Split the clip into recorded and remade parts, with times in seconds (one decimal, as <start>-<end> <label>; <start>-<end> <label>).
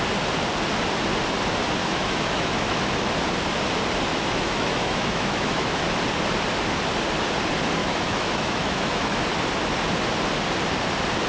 0.0-1.8 recorded; 1.8-3.1 remade; 3.1-4.1 recorded; 4.1-5.8 remade; 5.8-7.8 recorded; 7.8-9.2 remade; 9.2-11.3 recorded